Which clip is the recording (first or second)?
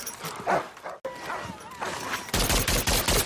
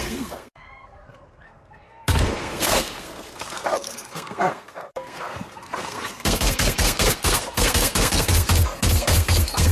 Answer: first